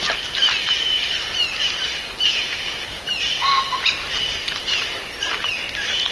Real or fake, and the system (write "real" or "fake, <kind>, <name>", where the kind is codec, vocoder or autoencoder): real